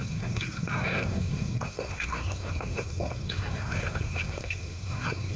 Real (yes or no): no